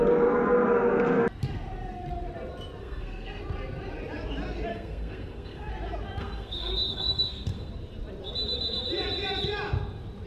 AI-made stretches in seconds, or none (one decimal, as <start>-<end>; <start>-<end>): 2.8-3.4; 4.7-5.7; 6.2-7.7